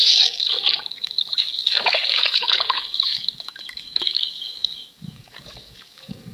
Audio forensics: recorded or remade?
remade